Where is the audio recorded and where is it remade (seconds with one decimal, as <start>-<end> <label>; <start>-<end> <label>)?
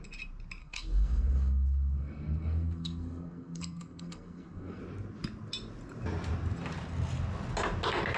0.0-0.6 recorded; 0.6-4.8 remade; 4.8-8.2 recorded